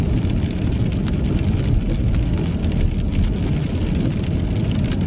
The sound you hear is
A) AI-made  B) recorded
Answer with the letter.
B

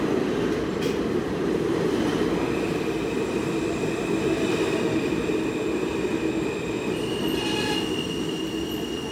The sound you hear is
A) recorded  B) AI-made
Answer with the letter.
A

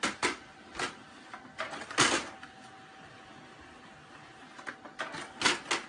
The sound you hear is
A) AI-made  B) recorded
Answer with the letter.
B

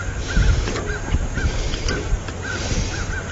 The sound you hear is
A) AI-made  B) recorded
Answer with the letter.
B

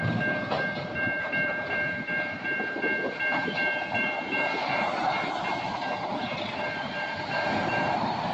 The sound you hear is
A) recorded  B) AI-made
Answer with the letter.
B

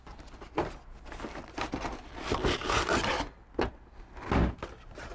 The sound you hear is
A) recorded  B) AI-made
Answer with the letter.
A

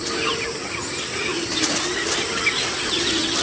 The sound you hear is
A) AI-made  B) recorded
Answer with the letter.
B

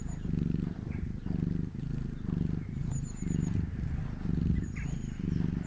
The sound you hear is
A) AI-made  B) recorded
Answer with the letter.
B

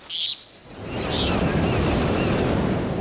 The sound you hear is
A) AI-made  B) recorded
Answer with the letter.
B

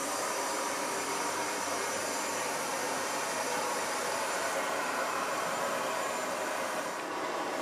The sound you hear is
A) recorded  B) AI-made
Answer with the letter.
B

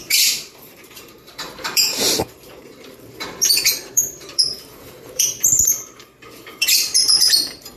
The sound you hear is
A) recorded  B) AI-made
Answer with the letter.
B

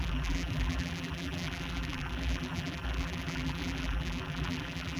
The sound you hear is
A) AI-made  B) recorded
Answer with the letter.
A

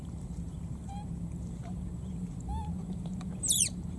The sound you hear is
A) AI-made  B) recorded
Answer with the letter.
A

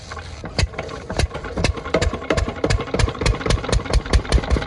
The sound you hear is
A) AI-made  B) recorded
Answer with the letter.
A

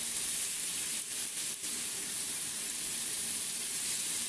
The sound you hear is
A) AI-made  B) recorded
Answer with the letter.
A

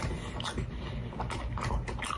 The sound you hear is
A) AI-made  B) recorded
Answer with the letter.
B